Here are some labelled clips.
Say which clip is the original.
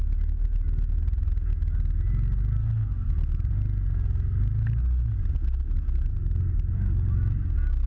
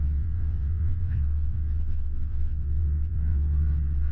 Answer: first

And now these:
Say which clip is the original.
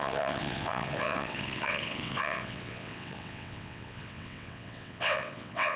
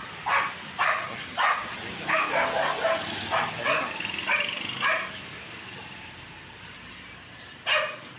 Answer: second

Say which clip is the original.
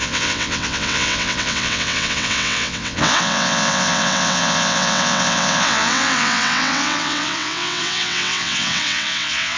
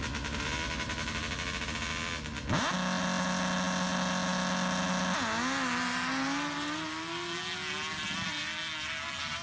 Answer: second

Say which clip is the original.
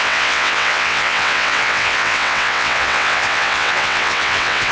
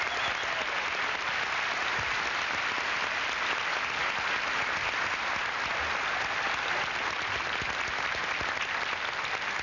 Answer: second